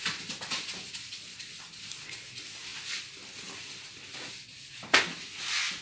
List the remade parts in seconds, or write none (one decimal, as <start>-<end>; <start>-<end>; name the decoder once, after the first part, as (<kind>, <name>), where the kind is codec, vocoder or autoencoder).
none